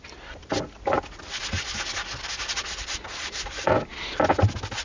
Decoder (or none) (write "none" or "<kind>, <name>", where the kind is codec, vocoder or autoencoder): none